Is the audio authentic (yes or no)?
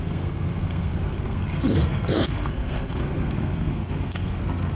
no